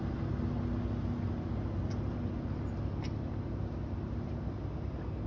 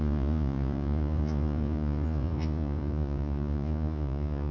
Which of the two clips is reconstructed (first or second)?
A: second